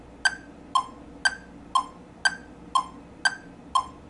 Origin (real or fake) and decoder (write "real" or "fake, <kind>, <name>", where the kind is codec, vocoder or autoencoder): real